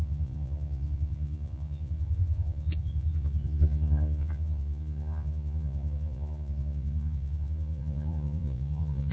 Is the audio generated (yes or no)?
yes